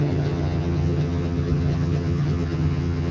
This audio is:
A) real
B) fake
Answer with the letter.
B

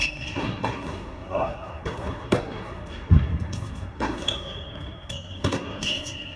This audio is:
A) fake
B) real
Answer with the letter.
A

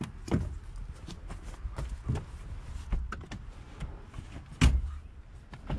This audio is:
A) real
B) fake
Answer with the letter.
A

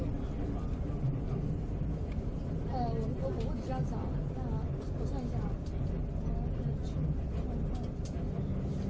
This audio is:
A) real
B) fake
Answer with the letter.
A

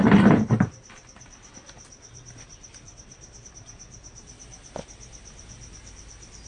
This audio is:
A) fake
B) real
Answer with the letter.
B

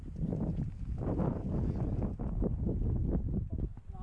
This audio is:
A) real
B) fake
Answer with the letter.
A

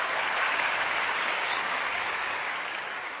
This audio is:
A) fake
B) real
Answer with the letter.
A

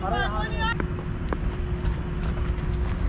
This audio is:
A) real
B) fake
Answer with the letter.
A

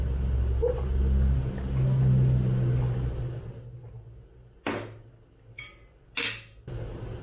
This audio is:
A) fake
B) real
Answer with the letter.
B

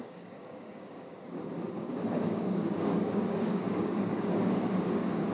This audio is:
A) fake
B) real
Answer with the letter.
A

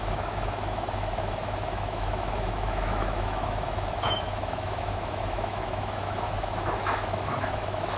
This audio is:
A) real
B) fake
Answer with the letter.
B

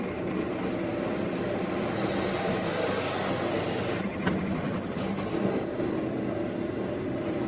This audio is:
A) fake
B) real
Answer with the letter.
B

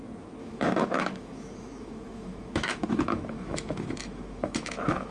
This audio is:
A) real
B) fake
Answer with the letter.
B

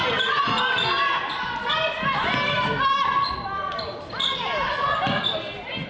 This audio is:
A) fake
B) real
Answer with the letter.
B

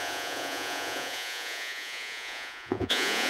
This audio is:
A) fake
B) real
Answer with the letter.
A